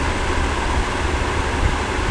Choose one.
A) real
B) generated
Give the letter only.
A